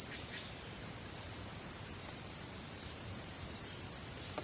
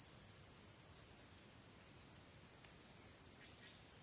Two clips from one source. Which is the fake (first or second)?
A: first